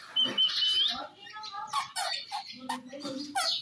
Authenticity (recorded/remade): recorded